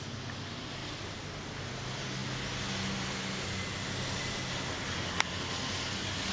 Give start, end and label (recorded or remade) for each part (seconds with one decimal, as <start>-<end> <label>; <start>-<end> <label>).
0.0-6.3 recorded